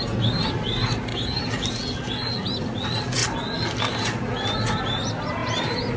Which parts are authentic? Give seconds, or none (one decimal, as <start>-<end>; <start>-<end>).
0.0-6.0

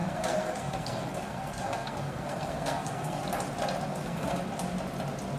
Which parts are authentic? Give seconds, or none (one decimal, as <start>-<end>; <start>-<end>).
3.2-3.9; 4.4-5.4